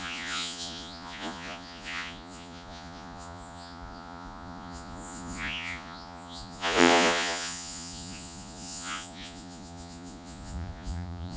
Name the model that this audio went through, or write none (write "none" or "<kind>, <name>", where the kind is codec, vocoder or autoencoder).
vocoder, Vocos